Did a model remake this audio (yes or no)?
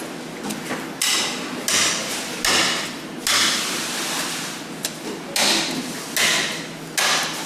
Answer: no